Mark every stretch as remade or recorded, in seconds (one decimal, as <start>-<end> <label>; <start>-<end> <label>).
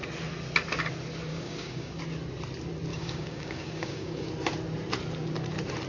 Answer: 0.0-1.3 recorded; 1.3-2.0 remade; 2.0-2.9 recorded; 2.9-4.3 remade; 4.3-5.9 recorded